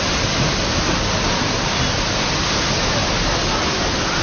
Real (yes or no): yes